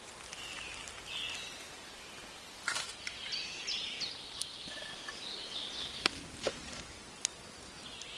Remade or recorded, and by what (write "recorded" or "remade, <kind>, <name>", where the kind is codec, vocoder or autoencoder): recorded